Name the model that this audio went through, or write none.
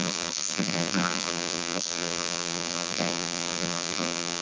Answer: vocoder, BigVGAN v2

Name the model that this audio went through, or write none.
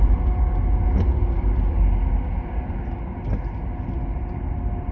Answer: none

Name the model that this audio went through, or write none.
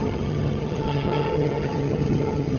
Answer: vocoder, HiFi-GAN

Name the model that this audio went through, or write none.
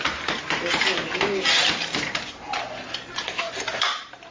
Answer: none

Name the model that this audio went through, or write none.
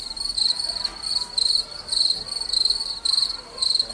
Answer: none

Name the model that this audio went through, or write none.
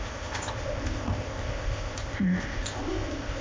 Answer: codec, ZipCodec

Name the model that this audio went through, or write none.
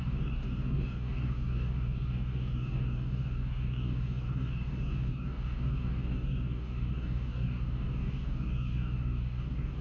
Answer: codec, DAC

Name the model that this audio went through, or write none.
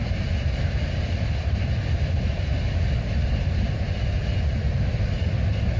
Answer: none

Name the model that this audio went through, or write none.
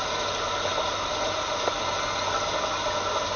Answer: none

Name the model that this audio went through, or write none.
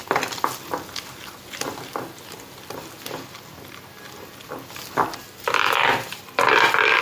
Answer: none